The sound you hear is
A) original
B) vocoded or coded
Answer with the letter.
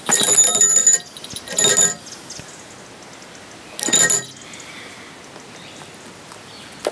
A